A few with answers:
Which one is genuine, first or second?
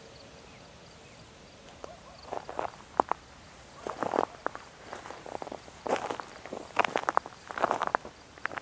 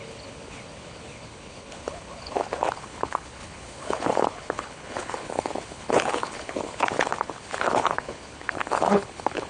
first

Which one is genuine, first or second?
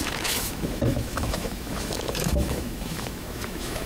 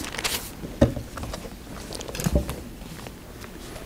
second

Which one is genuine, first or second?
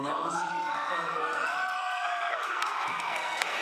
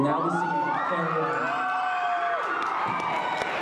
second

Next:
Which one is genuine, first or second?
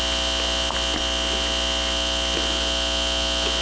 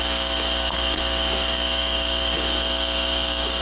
first